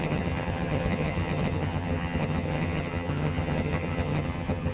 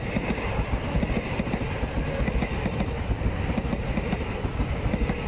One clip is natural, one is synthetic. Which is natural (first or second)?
second